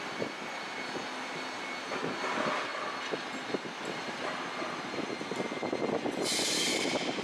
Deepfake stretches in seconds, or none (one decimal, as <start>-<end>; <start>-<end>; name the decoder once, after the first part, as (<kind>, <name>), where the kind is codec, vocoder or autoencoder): none